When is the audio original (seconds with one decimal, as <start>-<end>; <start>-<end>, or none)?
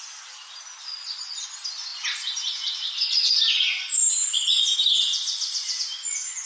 0.0-6.5